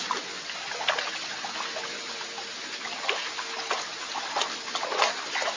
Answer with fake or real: real